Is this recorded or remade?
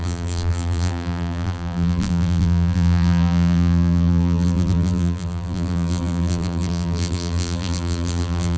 remade